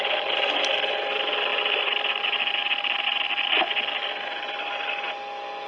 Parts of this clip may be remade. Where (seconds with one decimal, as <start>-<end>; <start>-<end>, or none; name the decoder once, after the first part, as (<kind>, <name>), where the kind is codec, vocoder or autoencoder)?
none